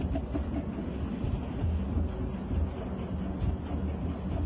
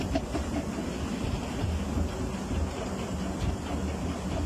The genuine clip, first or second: first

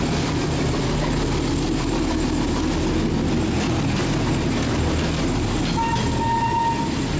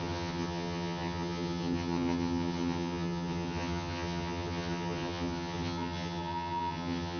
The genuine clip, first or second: first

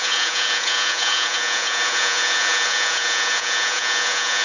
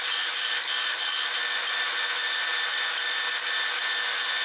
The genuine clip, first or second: second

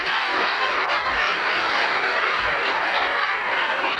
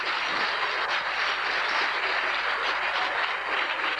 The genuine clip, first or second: second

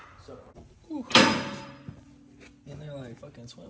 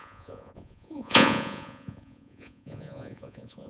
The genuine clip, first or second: first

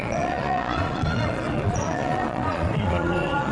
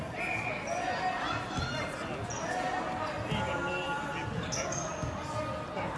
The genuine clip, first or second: second